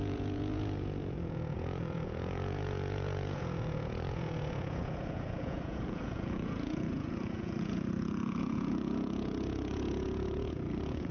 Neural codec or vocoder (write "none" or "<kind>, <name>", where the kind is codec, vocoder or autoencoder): vocoder, Vocos